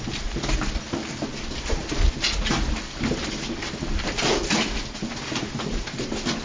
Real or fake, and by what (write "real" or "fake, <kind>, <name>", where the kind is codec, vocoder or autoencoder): real